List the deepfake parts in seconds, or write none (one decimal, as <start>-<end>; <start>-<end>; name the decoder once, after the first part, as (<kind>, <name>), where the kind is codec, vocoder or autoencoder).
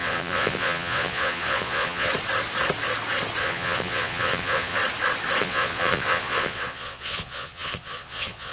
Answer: 0.0-2.1 (vocoder, Vocos); 3.4-4.8; 5.4-8.5